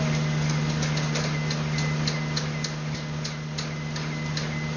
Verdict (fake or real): real